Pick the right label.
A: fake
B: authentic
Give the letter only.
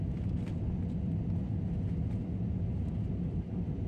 B